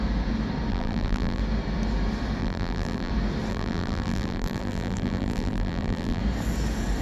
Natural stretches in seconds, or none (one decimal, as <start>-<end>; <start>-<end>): 0.0-0.7; 1.4-2.4; 3.1-3.5; 6.2-7.0